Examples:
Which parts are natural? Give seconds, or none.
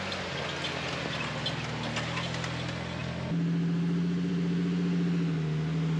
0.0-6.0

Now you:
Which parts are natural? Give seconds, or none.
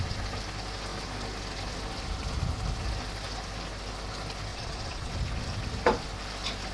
0.0-4.5; 5.1-6.7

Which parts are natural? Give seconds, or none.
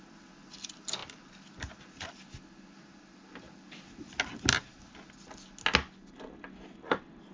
0.0-7.3